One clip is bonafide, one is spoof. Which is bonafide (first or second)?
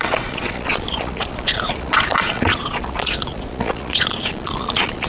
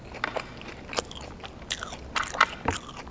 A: second